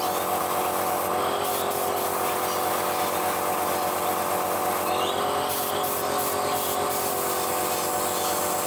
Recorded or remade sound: recorded